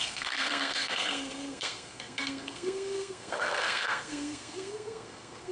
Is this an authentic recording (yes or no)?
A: no